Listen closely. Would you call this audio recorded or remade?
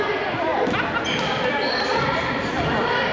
recorded